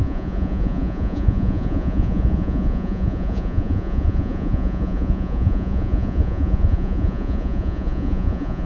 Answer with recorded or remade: remade